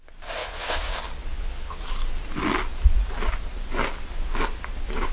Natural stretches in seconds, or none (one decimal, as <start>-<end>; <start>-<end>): 0.0-0.4; 0.9-1.3; 1.8-5.1